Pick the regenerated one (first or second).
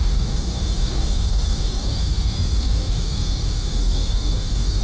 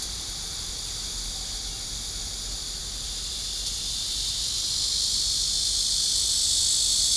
first